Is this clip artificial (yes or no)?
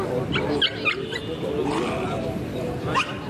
no